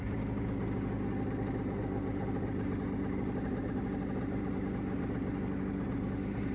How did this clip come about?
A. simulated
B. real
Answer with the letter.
B